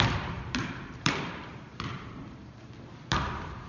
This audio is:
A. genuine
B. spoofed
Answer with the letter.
B